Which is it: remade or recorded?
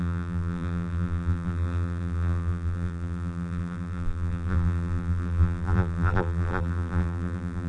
remade